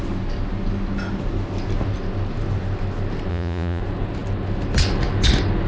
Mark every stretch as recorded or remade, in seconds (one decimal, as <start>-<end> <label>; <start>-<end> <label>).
0.0-3.3 recorded; 3.3-3.8 remade; 3.8-5.7 recorded